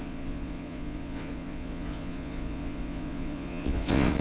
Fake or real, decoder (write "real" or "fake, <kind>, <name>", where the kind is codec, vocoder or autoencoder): fake, vocoder, Vocos